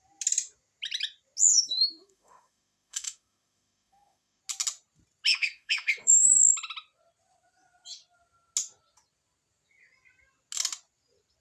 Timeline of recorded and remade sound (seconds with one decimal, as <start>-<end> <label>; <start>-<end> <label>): 0.0-1.5 recorded; 1.5-4.4 remade; 4.4-5.3 recorded; 5.3-6.4 remade; 6.4-11.4 recorded